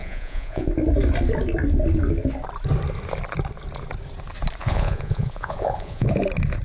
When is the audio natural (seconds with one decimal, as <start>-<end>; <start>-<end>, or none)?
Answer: 0.7-4.6; 6.1-6.6

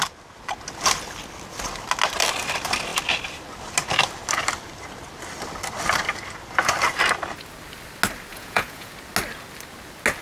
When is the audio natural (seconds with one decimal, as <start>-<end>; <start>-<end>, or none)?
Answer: 0.0-8.3; 8.9-10.2